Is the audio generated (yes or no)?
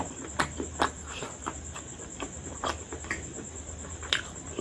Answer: no